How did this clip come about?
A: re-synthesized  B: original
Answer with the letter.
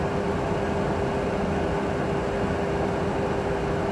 B